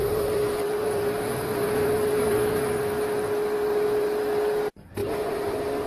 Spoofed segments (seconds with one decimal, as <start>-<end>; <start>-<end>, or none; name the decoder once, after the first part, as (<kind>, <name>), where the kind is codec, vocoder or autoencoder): 0.0-2.6 (vocoder, BigVGAN v2); 5.0-5.5